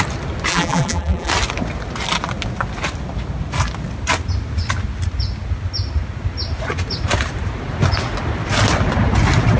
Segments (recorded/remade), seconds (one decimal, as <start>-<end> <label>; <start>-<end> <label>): 0.0-0.5 recorded; 0.5-1.3 remade; 1.3-9.6 recorded